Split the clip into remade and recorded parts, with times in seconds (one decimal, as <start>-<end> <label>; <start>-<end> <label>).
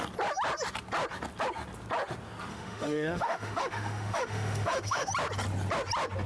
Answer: 0.0-2.5 recorded; 2.5-5.1 remade; 5.1-6.3 recorded